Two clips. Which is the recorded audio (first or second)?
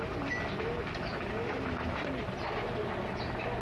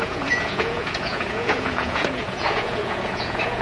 first